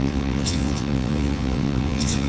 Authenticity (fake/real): fake